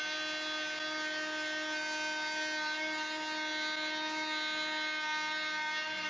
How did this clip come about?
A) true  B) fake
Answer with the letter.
A